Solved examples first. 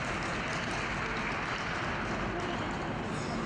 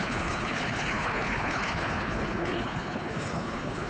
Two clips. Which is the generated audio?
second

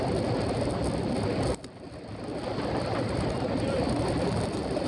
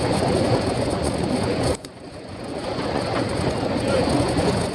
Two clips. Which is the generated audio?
second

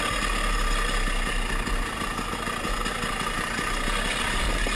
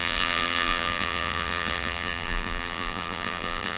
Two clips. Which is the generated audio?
second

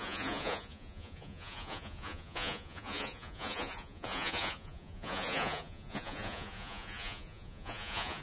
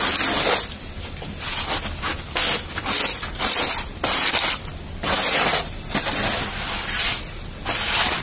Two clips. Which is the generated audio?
first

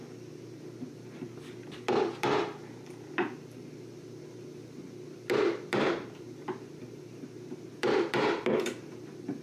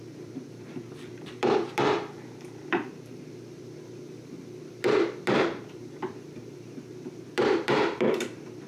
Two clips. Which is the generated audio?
second